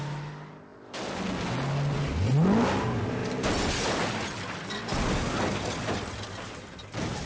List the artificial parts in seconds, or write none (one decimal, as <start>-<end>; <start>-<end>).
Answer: none